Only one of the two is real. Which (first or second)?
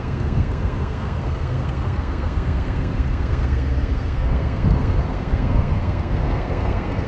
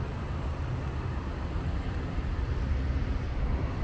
second